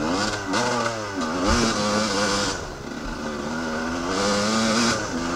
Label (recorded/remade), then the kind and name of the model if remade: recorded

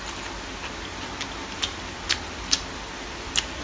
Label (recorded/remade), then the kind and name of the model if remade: recorded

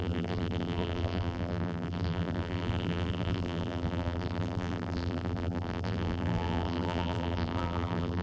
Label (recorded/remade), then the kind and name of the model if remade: remade, vocoder, BigVGAN v2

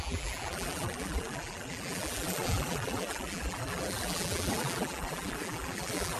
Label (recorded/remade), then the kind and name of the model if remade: remade, vocoder, BigVGAN v2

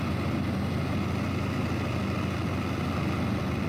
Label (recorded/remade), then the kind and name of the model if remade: recorded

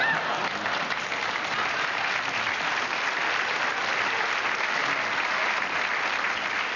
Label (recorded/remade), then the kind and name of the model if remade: recorded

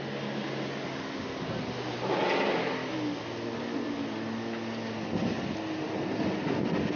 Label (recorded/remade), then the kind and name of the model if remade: recorded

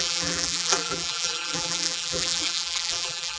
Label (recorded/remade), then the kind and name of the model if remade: remade, vocoder, BigVGAN v2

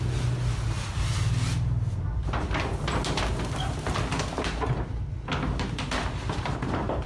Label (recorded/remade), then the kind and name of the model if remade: recorded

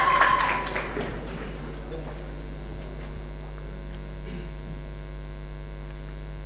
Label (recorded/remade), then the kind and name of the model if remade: recorded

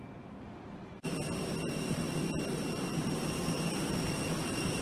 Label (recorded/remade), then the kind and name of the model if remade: remade, vocoder, BigVGAN v2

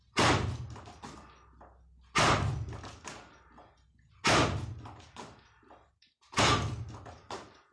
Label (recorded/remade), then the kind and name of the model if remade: recorded